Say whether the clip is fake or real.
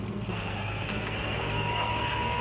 fake